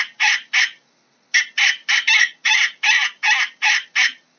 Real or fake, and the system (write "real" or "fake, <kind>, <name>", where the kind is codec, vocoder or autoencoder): real